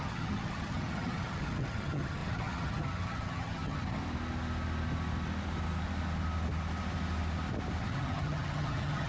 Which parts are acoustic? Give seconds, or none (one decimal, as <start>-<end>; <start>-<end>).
4.0-7.8